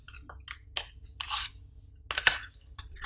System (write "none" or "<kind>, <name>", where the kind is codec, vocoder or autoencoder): none